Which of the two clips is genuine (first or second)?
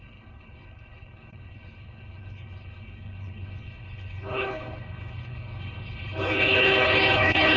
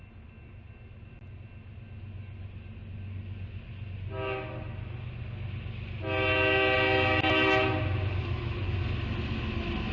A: second